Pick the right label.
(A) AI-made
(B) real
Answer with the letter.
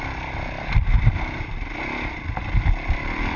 B